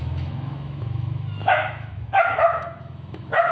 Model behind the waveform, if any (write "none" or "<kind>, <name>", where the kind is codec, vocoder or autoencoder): autoencoder, DAC-VAE